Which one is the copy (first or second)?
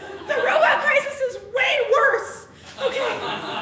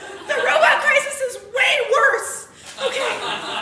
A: first